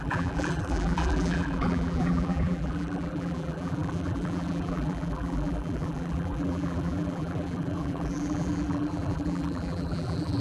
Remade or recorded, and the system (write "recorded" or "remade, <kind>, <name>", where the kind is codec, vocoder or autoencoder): remade, vocoder, BigVGAN v2